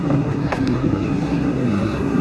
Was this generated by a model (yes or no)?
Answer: yes